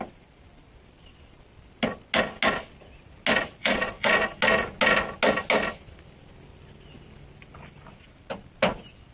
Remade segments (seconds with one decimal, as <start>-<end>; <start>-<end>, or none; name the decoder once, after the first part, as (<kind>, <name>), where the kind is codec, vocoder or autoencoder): 3.6-4.4 (vocoder, Vocos)